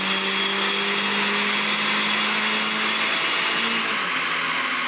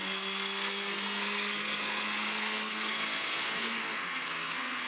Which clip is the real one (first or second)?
first